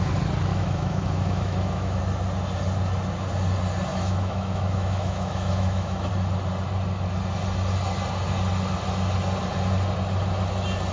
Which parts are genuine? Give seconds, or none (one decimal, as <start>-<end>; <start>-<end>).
0.0-0.5; 2.0-3.9; 6.1-10.9